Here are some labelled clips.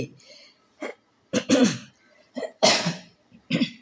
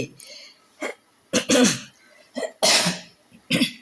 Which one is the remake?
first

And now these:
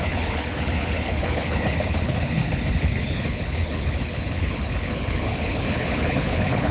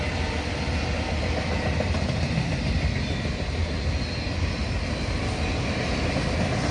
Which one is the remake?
first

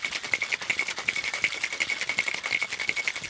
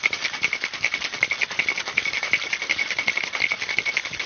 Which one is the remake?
second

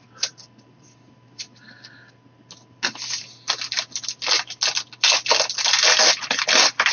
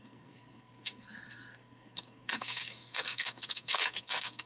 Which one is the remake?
second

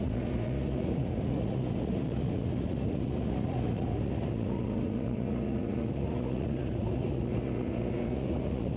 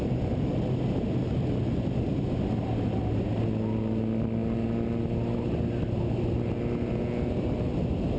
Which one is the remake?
first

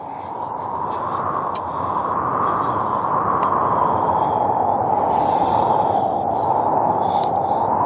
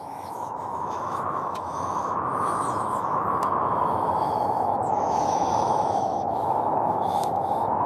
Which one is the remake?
second